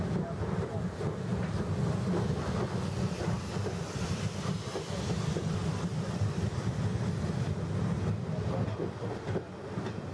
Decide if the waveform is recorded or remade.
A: recorded